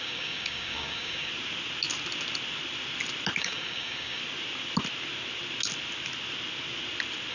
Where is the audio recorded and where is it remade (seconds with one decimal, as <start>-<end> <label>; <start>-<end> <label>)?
0.0-1.3 remade; 1.3-3.4 recorded; 3.4-4.2 remade; 4.2-7.3 recorded